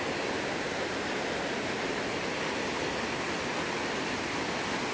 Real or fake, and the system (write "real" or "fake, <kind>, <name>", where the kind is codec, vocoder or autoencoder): real